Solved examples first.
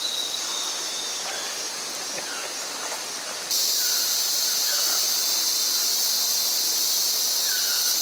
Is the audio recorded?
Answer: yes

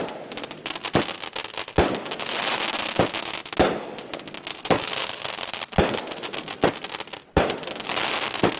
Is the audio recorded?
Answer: yes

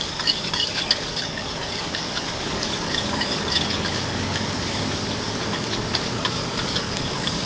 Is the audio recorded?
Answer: no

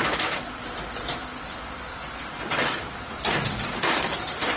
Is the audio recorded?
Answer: no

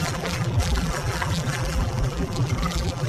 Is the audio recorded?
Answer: no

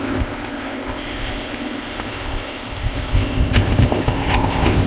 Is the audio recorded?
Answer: no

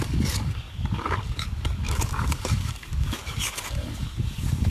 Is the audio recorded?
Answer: no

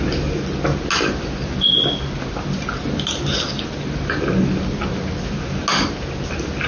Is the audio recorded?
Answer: yes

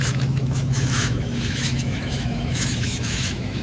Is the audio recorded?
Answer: no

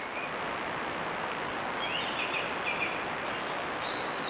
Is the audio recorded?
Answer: yes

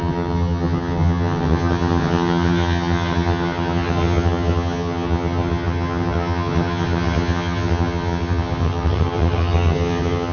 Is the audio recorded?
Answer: no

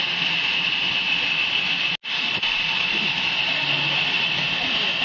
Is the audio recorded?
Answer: yes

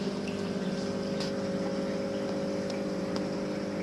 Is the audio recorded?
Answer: yes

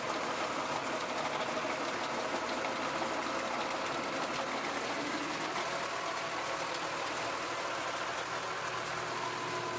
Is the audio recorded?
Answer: yes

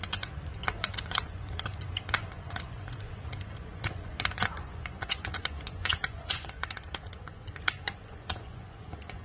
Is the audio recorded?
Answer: no